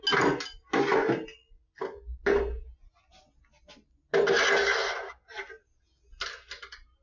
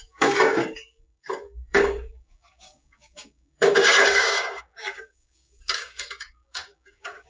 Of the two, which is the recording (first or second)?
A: first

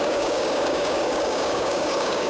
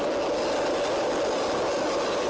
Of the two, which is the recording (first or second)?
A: second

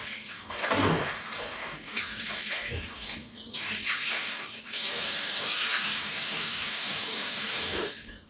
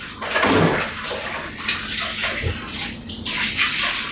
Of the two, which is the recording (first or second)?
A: second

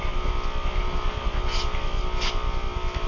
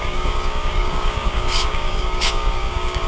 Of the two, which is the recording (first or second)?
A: first